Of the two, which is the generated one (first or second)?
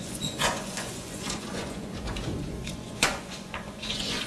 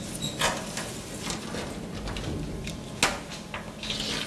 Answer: first